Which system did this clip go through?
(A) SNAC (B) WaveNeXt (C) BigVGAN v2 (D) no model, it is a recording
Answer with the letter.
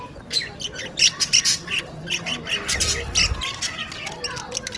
D